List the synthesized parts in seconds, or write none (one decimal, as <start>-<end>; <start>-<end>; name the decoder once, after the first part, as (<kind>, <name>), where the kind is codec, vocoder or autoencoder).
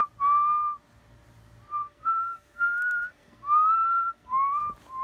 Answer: 1.8-4.6 (codec, SNAC)